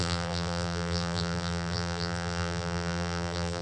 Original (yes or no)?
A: no